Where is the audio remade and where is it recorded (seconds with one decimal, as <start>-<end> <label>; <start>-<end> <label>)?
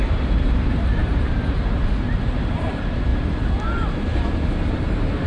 0.0-3.1 remade; 3.1-4.7 recorded; 4.7-5.3 remade